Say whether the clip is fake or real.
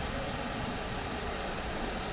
fake